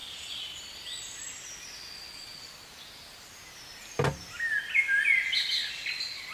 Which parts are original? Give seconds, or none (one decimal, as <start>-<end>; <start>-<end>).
0.0-6.3